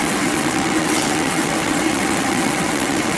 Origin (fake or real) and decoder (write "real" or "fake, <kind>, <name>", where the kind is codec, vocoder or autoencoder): fake, vocoder, WaveNeXt